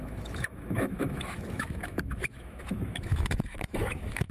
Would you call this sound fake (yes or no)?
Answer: yes